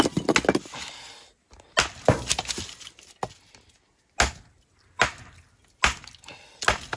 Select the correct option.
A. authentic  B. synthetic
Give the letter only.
A